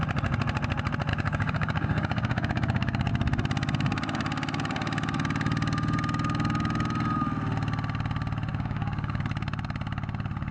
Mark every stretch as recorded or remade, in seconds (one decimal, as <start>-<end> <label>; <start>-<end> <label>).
0.0-1.1 recorded; 1.1-3.1 remade; 3.1-8.5 recorded; 8.5-9.2 remade; 9.2-10.5 recorded